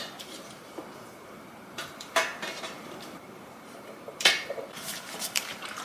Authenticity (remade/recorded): remade